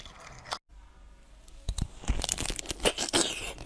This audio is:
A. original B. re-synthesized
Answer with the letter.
A